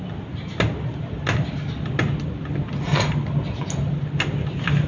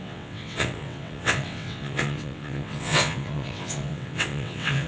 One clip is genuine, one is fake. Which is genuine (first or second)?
first